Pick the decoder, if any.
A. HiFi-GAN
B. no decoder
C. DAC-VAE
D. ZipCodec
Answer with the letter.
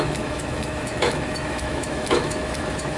C